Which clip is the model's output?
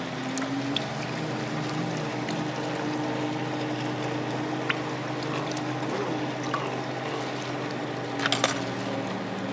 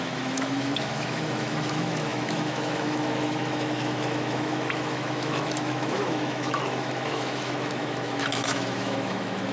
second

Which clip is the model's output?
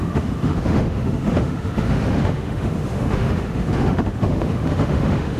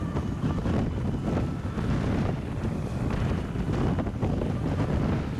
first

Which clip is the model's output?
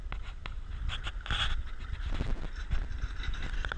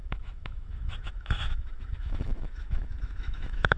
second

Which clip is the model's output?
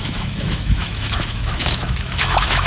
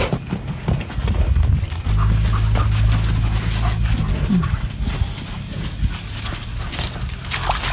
first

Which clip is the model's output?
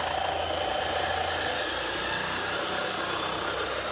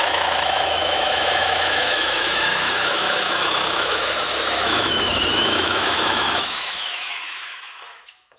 second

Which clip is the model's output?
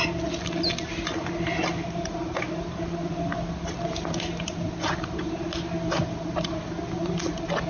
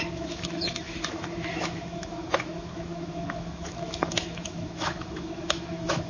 second